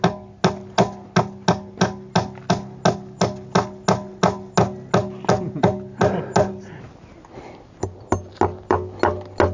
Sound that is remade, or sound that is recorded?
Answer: recorded